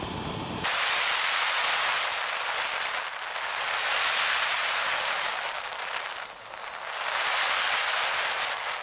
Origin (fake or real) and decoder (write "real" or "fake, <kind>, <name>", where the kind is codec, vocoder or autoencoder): real